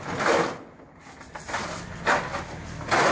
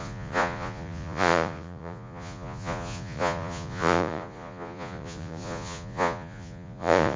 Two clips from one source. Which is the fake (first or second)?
second